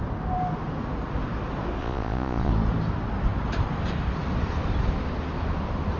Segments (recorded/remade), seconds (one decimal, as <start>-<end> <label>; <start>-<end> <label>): 0.0-1.8 recorded; 1.8-2.5 remade; 2.5-6.0 recorded